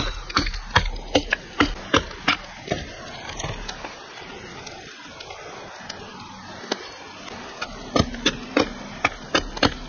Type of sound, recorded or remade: recorded